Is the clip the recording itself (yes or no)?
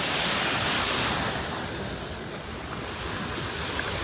yes